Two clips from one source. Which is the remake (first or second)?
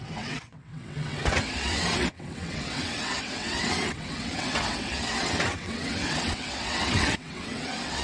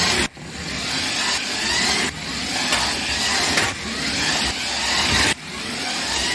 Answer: first